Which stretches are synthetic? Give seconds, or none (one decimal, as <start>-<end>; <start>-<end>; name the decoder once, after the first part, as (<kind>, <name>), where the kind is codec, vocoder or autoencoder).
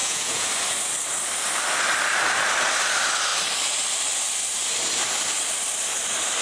0.0-0.5 (vocoder, Vocos)